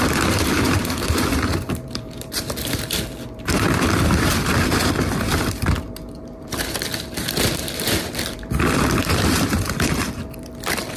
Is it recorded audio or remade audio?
remade